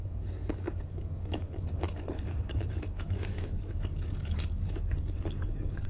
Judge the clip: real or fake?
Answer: fake